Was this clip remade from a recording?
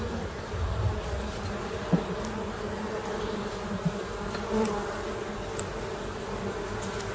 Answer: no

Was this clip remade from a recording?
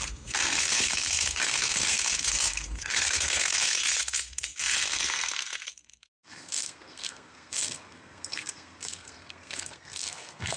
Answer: yes